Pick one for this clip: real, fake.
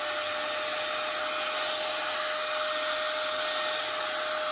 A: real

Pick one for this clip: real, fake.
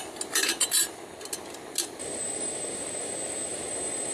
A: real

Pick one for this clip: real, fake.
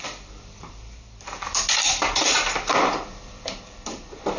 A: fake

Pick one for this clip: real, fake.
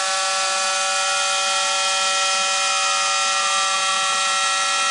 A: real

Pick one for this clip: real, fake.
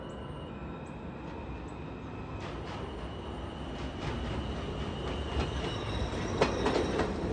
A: real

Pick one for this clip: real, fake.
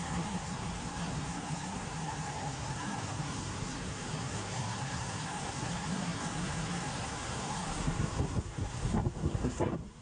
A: fake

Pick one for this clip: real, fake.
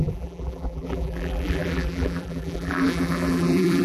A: fake